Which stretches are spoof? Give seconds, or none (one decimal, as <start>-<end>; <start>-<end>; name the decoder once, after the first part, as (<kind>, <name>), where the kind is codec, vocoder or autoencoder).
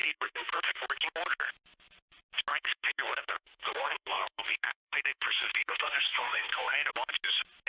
0.0-0.8 (autoencoder, DAC-VAE); 2.5-6.9